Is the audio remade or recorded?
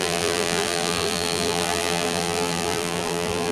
remade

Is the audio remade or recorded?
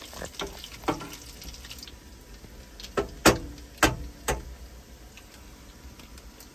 recorded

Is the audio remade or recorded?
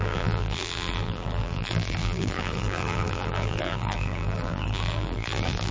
remade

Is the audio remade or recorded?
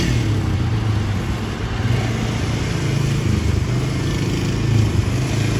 recorded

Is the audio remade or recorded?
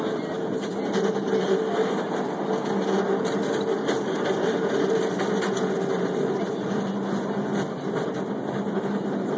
recorded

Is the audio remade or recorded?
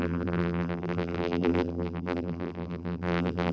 remade